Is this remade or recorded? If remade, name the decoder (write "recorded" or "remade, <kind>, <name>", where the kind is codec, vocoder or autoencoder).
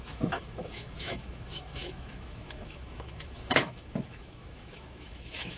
remade, autoencoder, DAC-VAE